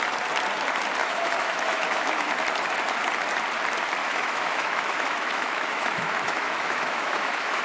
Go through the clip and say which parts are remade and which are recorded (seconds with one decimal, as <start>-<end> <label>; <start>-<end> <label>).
0.0-1.0 recorded; 1.0-2.3 remade; 2.3-4.0 recorded; 4.0-7.6 remade